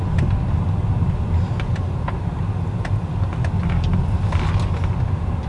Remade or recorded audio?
recorded